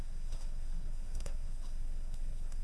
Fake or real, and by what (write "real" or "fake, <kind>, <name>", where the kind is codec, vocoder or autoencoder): fake, codec, SNAC